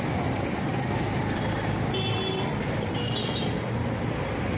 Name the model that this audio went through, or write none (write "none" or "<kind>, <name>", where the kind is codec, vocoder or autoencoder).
none